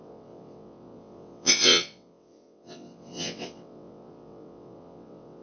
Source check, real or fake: fake